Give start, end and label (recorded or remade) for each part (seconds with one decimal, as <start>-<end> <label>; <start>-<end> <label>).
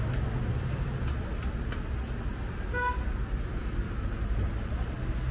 0.0-5.3 recorded